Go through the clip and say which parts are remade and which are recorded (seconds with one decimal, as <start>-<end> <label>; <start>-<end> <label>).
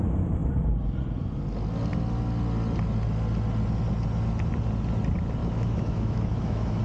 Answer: 0.0-5.4 recorded; 5.4-6.8 remade